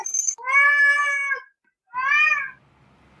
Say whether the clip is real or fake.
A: real